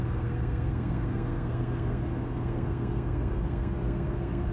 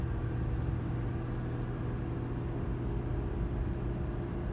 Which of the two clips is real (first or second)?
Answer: second